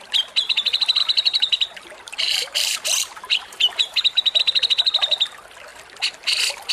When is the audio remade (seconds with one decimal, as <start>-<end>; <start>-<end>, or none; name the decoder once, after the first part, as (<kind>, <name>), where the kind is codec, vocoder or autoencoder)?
1.0-4.4 (vocoder, BigVGAN v2)